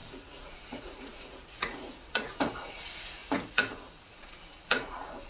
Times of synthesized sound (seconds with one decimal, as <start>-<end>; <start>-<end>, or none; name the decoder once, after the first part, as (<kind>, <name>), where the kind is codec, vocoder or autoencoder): 0.0-5.3 (vocoder, Vocos)

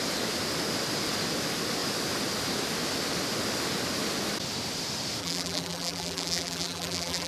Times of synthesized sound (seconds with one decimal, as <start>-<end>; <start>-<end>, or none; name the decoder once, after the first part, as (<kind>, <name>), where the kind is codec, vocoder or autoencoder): 5.2-7.3 (vocoder, BigVGAN v2)

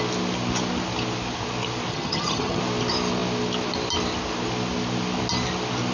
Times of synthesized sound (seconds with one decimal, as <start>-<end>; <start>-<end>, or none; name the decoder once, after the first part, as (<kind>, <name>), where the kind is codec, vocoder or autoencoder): 1.9-2.6 (vocoder, HiFi-GAN)

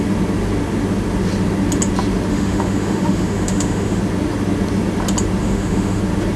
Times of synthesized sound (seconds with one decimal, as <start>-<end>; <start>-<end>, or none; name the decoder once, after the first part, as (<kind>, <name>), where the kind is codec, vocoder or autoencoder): 2.3-4.0 (autoencoder, DAC-VAE); 5.4-6.0

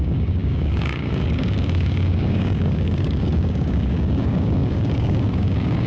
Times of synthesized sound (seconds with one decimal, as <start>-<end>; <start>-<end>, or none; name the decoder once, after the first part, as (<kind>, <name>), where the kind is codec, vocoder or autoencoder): 0.0-5.9 (codec, DAC)

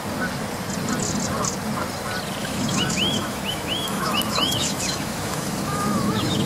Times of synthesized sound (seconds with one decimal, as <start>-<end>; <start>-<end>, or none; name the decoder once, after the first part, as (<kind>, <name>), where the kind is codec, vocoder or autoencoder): 2.4-6.5 (autoencoder, DAC-VAE)

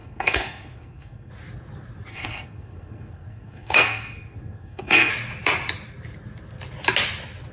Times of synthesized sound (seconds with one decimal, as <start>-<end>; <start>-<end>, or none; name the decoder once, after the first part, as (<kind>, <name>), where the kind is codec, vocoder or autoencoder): 0.0-1.3 (codec, SNAC); 2.1-5.1

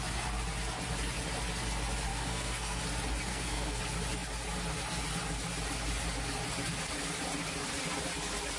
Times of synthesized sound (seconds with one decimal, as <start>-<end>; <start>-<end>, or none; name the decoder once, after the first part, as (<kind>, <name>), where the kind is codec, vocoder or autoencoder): 2.1-2.8 (codec, SNAC); 3.3-3.8